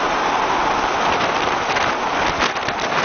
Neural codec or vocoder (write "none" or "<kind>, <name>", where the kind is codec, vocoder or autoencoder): none